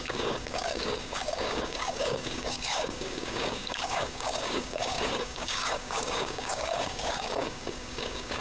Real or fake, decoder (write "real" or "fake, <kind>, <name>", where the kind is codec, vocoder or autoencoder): fake, codec, DAC